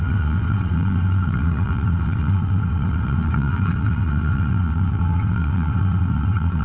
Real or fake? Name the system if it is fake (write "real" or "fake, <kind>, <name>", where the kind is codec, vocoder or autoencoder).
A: fake, vocoder, WaveNeXt